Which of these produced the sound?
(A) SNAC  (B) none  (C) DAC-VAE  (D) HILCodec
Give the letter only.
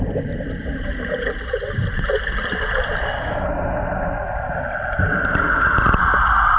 B